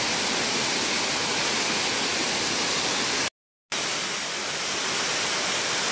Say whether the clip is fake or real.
real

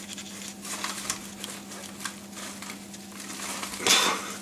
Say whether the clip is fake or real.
real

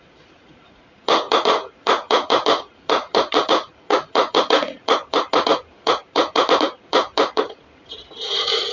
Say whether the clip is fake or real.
fake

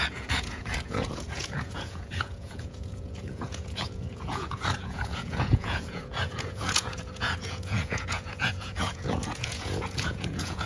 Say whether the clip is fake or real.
fake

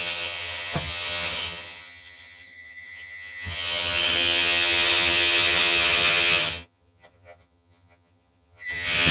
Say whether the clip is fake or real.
fake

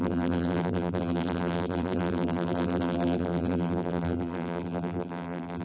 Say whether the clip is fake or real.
fake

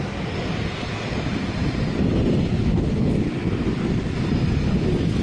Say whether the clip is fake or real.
real